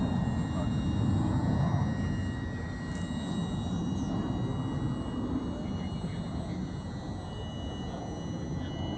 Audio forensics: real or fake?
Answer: real